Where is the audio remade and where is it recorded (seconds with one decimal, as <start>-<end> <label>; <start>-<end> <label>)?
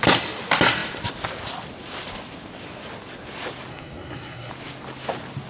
0.0-3.7 recorded; 3.7-4.5 remade; 4.5-5.5 recorded